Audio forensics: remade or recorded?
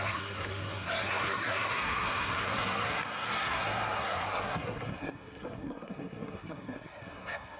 remade